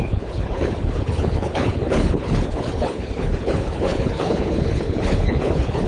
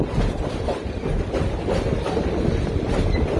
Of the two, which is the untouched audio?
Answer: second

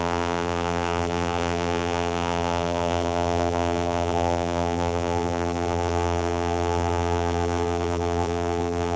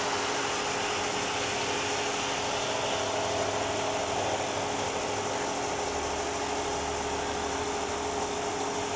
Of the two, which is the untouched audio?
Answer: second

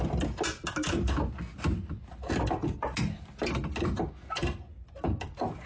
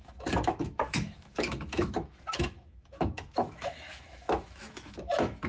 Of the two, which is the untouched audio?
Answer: first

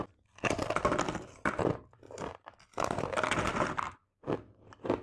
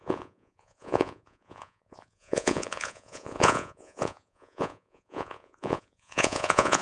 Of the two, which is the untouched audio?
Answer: first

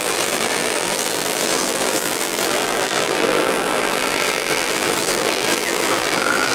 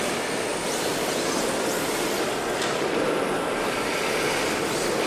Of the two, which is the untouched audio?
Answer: second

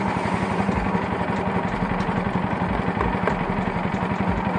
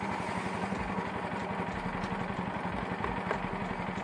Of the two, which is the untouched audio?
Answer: second